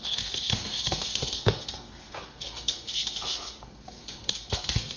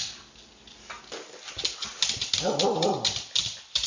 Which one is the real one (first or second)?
second